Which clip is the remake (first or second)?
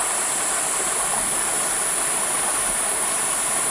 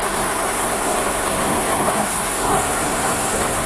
second